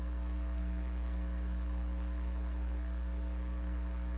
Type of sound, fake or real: fake